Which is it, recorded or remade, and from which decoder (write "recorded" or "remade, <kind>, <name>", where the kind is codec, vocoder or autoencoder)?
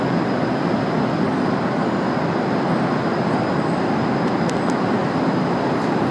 recorded